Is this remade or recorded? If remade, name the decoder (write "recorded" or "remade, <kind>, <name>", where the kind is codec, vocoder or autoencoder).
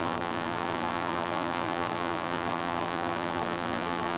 remade, vocoder, BigVGAN v2